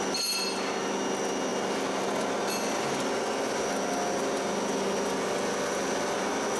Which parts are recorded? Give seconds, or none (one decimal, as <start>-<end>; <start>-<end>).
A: 0.0-6.6